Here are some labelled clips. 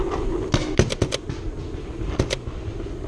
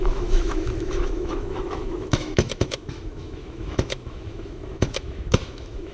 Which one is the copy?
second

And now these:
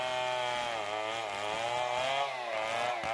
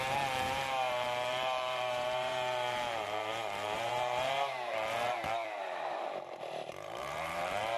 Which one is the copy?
second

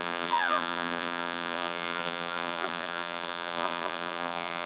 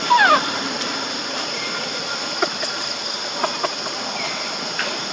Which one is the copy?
first